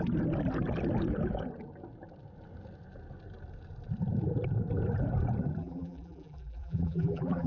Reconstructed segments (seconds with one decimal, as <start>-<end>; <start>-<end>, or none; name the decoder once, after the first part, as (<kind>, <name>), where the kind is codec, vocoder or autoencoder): 5.6-7.5 (vocoder, BigVGAN v2)